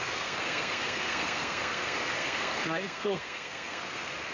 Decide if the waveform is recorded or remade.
remade